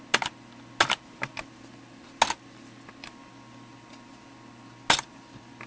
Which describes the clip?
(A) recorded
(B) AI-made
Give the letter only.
A